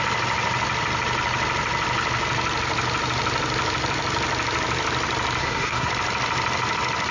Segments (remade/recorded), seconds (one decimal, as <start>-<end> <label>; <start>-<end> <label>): 0.0-5.4 recorded; 5.4-5.9 remade; 5.9-7.1 recorded